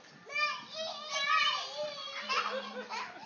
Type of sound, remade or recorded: recorded